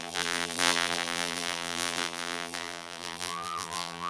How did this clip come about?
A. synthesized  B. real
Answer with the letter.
A